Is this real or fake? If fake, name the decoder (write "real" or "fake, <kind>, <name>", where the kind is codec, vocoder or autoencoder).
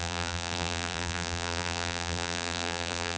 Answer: fake, vocoder, BigVGAN v2